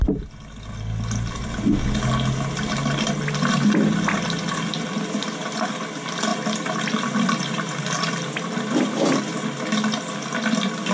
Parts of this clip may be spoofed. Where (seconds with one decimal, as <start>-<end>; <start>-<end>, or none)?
none